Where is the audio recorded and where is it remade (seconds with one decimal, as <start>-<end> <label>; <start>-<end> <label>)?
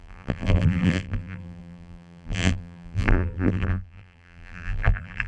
0.0-5.3 remade